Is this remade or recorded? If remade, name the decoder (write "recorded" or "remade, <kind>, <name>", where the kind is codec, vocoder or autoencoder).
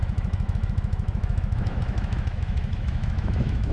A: remade, autoencoder, DAC-VAE